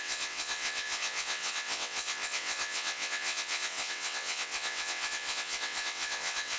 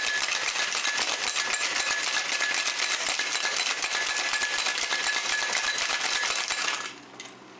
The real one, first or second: second